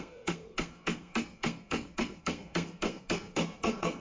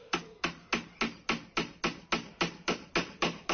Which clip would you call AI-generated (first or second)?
first